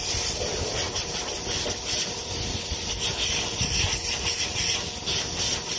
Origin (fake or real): real